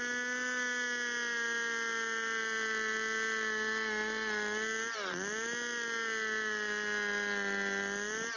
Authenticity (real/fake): real